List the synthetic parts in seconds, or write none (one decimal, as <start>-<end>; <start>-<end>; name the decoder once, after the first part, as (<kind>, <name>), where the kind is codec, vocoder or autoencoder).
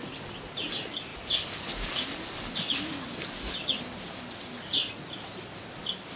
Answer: none